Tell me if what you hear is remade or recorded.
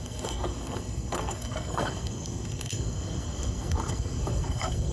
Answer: remade